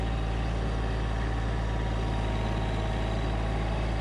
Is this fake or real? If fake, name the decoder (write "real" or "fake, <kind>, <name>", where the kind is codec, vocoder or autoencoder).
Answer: real